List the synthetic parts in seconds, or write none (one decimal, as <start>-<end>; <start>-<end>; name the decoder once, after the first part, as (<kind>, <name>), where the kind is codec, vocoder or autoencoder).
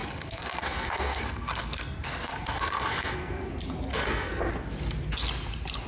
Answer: 0.0-3.5 (codec, SNAC); 3.9-4.5